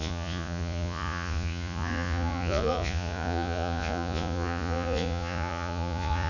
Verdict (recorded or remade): remade